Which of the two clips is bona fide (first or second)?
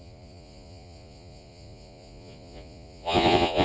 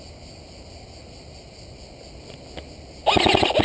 second